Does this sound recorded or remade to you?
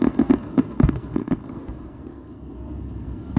remade